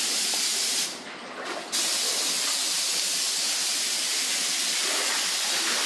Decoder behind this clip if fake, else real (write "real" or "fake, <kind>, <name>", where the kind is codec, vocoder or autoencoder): real